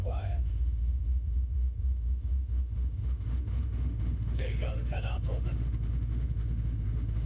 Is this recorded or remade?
remade